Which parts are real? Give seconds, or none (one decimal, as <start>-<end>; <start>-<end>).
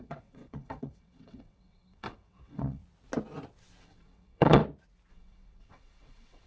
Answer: 2.8-3.8; 4.6-5.1